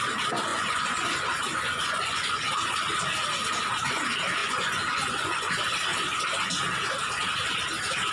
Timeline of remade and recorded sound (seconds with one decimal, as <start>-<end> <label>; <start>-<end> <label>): 0.0-0.5 recorded; 0.5-1.1 remade; 1.1-1.5 recorded; 1.5-2.4 remade; 2.4-4.4 recorded; 4.4-5.5 remade; 5.5-8.1 recorded